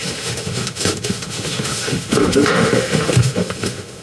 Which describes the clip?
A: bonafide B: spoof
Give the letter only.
B